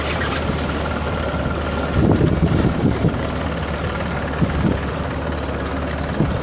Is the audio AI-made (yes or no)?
no